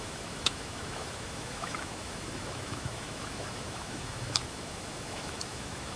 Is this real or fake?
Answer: fake